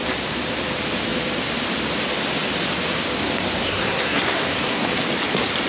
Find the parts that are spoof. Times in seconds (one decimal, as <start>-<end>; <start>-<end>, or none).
3.6-4.9